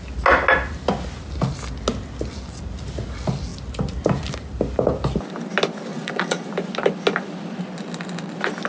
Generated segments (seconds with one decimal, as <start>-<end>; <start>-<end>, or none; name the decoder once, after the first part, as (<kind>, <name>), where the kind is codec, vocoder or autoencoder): 5.9-6.5 (vocoder, Vocos)